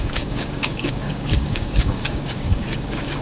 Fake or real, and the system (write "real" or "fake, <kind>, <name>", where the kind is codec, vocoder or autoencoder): fake, codec, DAC